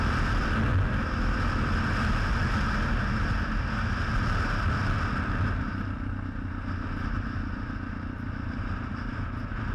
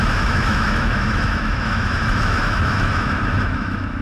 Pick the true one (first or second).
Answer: first